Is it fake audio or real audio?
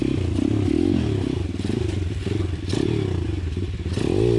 real